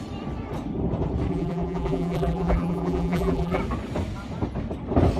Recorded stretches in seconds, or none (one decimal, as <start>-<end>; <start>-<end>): 0.0-1.3; 3.6-5.2